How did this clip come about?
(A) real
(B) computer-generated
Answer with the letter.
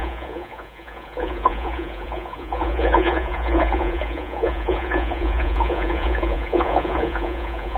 B